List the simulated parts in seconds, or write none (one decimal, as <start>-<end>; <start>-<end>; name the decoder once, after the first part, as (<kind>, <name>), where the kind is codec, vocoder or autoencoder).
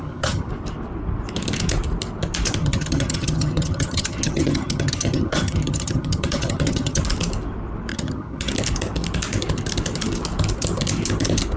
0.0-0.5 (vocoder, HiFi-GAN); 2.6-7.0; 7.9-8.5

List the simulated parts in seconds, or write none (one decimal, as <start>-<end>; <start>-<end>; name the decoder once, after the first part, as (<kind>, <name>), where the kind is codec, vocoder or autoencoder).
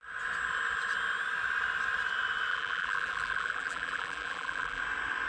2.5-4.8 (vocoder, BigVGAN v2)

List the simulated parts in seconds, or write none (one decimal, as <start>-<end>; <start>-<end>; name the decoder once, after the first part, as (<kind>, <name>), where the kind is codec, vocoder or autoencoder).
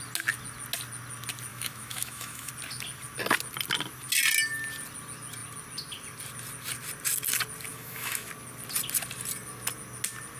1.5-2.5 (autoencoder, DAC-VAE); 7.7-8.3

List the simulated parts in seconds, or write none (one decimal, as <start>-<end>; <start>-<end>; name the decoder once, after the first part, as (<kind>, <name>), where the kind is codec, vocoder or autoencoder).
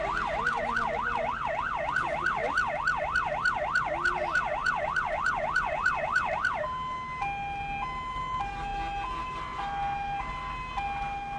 4.6-6.3 (vocoder, Vocos)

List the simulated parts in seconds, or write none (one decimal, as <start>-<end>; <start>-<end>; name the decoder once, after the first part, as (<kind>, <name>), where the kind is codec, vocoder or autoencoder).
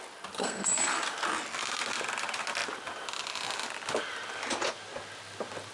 0.4-1.0 (codec, SNAC)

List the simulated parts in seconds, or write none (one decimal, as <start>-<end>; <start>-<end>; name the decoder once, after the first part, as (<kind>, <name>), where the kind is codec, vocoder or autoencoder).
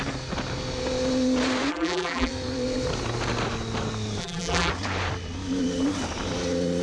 1.7-2.3 (vocoder, BigVGAN v2); 4.2-4.7